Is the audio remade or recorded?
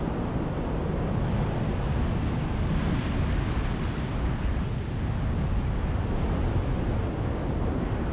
recorded